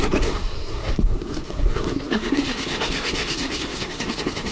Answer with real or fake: fake